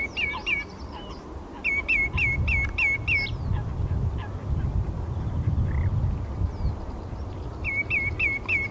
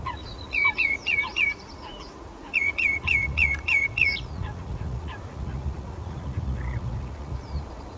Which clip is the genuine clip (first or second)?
first